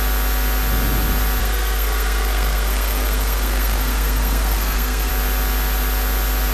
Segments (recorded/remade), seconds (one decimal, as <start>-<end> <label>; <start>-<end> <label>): 0.0-1.4 recorded; 1.4-5.1 remade; 5.1-6.5 recorded